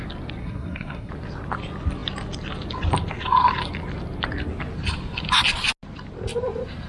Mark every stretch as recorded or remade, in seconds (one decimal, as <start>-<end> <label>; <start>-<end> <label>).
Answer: 0.0-0.4 recorded; 0.4-1.1 remade; 1.1-6.9 recorded